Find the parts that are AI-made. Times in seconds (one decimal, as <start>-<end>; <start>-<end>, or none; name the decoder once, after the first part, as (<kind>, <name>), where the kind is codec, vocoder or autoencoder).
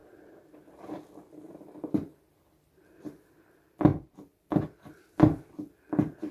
2.3-6.3 (vocoder, BigVGAN v2)